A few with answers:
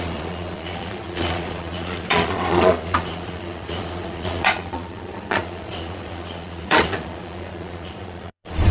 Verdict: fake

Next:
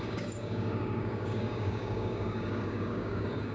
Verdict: fake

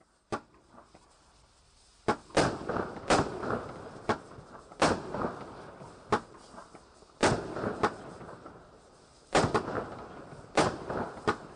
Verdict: real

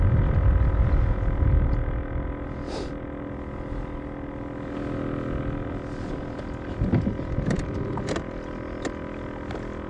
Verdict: real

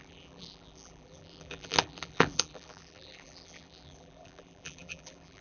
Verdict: fake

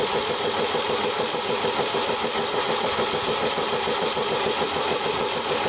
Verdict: fake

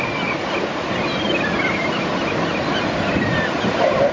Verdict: real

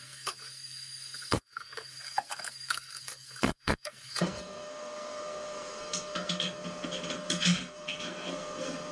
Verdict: fake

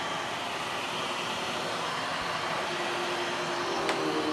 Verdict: real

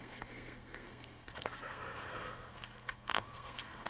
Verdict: fake